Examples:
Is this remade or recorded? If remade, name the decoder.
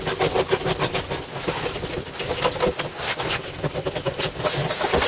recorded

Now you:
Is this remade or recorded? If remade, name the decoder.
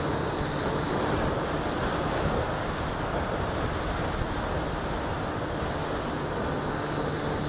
recorded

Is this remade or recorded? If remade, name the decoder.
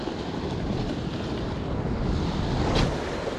recorded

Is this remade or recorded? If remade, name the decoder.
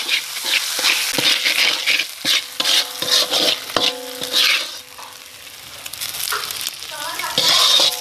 recorded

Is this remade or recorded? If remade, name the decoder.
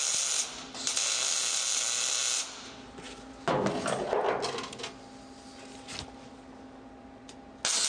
recorded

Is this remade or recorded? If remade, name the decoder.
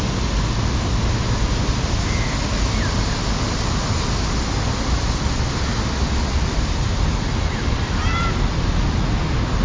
recorded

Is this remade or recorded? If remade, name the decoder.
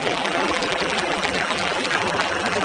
remade, vocoder, BigVGAN v2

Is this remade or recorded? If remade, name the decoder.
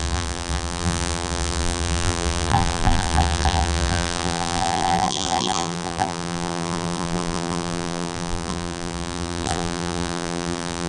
remade, vocoder, BigVGAN v2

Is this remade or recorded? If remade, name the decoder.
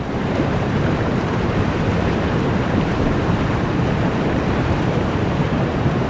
remade, vocoder, BigVGAN v2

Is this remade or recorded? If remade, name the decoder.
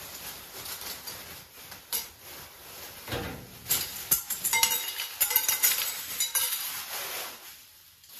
remade, vocoder, BigVGAN v2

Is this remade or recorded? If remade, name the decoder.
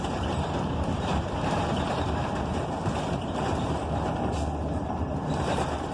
remade, vocoder, BigVGAN v2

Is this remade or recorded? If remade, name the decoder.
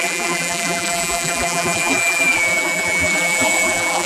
remade, vocoder, BigVGAN v2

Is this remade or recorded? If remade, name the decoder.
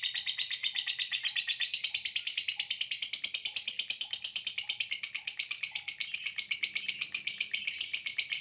remade, vocoder, BigVGAN v2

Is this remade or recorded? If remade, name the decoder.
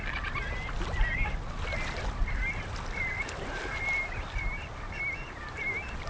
recorded